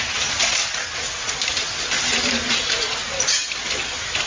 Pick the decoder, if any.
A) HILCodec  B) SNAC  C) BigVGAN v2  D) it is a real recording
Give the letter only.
D